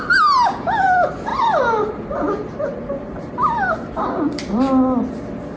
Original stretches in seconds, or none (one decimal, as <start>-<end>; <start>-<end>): 0.0-1.3; 4.6-5.6